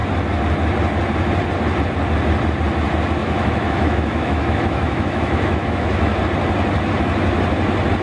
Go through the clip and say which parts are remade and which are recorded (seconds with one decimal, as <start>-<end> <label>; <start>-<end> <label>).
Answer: 0.0-3.2 recorded; 3.2-6.2 remade; 6.2-8.0 recorded